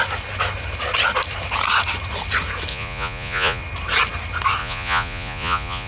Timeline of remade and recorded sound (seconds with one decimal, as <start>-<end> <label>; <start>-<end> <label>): 0.0-2.7 recorded; 2.7-3.6 remade; 3.6-4.6 recorded; 4.6-5.9 remade